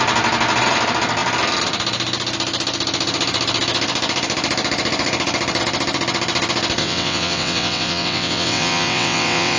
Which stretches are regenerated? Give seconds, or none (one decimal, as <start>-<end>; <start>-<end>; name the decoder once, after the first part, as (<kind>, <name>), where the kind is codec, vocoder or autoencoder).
6.8-9.6 (vocoder, WaveNeXt)

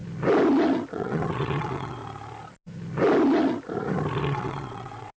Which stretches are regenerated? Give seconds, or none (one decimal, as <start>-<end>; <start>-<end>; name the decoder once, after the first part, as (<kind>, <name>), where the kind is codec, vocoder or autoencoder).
0.9-2.0 (vocoder, WaveNeXt); 4.2-5.2

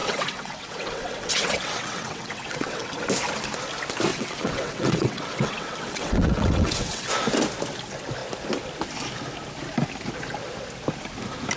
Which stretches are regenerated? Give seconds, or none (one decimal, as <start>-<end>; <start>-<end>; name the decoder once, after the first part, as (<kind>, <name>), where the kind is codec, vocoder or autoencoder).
0.0-3.0 (vocoder, WaveNeXt); 4.1-7.1

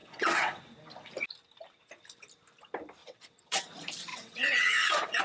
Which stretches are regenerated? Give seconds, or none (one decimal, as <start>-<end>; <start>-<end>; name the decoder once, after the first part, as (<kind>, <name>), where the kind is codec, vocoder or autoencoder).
0.0-0.6 (vocoder, WaveNeXt); 3.0-3.6; 4.1-5.2